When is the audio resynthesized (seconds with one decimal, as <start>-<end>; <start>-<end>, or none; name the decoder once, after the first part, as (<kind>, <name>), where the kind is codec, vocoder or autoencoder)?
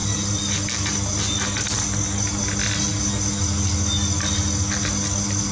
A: none